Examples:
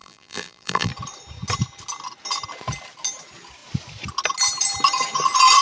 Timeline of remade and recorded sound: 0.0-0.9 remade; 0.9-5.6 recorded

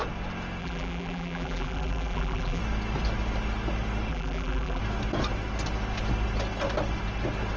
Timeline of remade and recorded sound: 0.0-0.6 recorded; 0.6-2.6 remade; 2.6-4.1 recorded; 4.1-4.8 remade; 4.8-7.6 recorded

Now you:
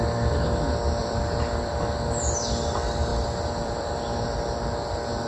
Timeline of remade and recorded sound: 0.0-1.0 recorded; 1.0-1.7 remade; 1.7-3.1 recorded; 3.1-4.0 remade; 4.0-5.3 recorded